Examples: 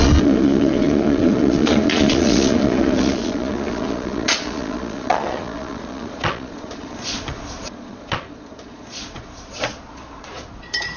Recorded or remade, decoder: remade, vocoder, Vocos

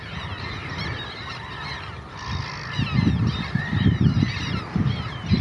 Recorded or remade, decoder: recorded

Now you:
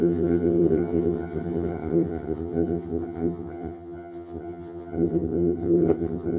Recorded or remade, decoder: remade, vocoder, HiFi-GAN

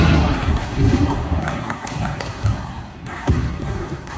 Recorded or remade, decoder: remade, codec, SNAC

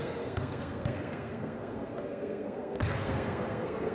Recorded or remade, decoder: remade, codec, SNAC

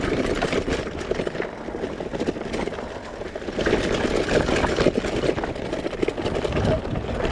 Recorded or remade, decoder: recorded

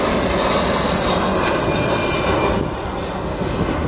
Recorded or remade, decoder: recorded